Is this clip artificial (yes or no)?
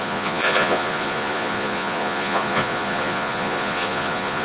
yes